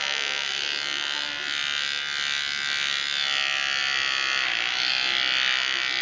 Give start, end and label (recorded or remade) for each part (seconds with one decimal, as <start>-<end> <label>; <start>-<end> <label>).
0.0-6.0 recorded